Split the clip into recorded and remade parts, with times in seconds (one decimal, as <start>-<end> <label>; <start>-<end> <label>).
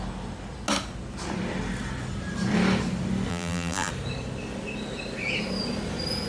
0.0-3.3 recorded; 3.3-3.9 remade; 3.9-6.3 recorded